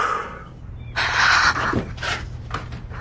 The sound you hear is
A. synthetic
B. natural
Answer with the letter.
B